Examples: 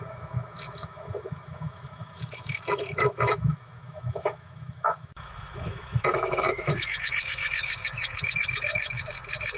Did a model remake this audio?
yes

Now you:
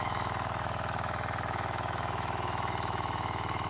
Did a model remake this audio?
yes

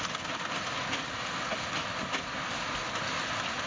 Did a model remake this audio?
no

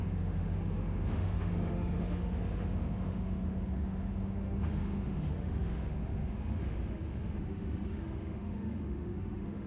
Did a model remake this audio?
yes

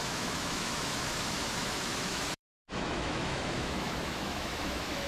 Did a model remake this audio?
yes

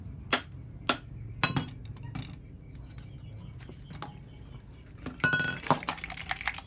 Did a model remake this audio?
no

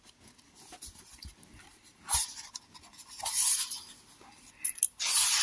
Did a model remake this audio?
no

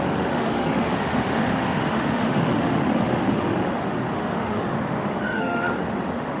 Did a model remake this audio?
yes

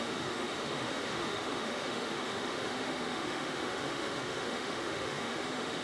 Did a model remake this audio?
yes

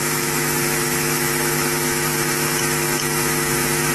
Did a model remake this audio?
yes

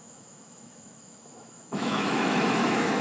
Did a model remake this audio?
yes